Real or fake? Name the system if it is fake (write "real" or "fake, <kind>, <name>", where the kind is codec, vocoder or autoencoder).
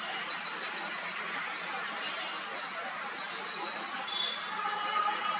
real